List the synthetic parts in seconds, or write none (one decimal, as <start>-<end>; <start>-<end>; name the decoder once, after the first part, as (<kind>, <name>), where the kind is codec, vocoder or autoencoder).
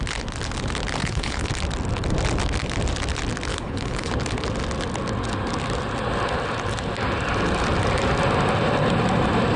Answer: 1.0-1.5 (codec, HILCodec); 3.5-4.1